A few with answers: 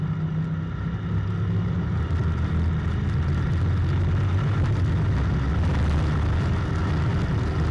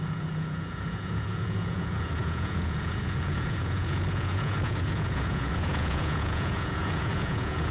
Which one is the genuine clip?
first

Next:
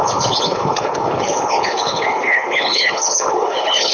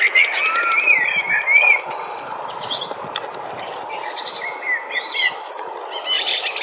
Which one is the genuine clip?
second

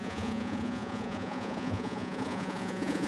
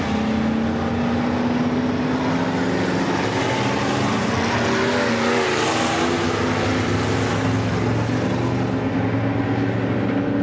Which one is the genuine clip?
second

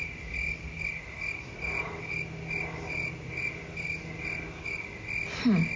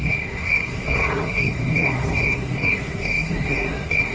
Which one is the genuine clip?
first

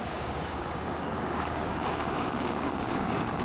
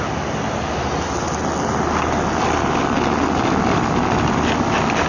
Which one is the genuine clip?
second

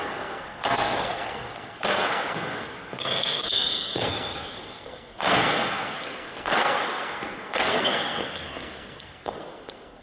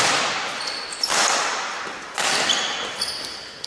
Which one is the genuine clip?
second